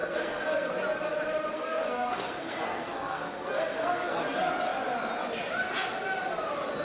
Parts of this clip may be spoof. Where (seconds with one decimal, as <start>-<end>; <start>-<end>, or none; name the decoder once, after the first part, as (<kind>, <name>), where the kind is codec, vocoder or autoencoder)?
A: 0.0-0.7 (codec, SNAC); 1.5-4.2